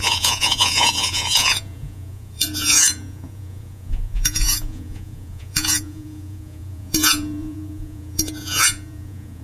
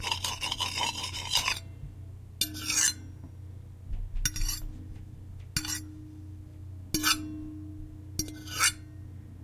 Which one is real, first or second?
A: second